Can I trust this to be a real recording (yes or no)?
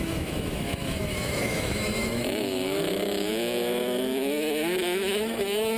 no